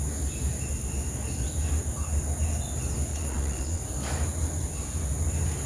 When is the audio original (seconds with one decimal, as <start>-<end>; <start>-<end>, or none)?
0.0-3.1; 3.8-5.7